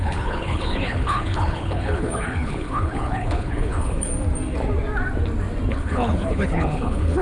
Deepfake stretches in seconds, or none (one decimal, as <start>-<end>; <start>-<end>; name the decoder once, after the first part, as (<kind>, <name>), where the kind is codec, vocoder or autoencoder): 0.0-4.1 (codec, HILCodec); 5.7-7.2